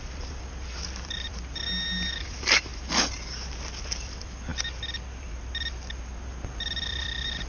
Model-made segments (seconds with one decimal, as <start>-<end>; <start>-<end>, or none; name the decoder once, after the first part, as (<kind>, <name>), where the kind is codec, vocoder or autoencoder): 0.0-2.7 (vocoder, BigVGAN v2); 3.8-4.5; 6.6-7.5